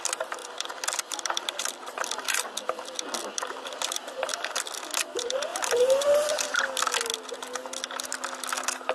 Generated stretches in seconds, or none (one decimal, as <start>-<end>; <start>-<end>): 0.4-4.5; 5.5-6.6

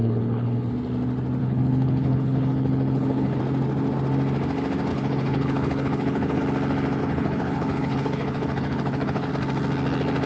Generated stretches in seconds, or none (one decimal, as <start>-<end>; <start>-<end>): 0.0-0.7; 1.4-3.4; 4.9-6.4; 7.0-9.3

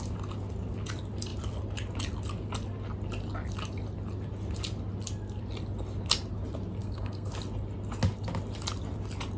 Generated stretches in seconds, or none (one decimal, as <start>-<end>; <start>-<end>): 6.8-7.3

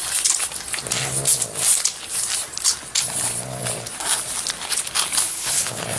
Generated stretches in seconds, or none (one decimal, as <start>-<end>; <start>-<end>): 5.3-6.0

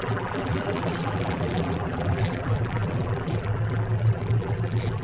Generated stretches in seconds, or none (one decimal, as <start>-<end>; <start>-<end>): 0.0-5.0